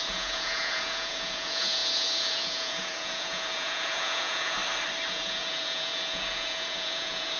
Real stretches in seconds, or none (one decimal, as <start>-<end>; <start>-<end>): 4.6-5.1